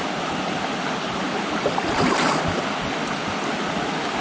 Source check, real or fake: real